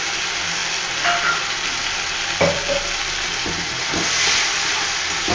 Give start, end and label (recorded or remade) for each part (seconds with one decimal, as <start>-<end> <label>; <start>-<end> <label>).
0.0-5.3 recorded